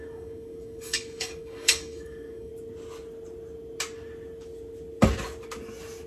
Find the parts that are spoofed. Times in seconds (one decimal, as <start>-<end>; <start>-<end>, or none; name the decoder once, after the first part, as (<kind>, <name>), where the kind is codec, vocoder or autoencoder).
0.0-2.5 (codec, DAC)